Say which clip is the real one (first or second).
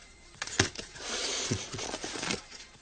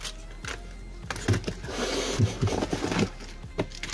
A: second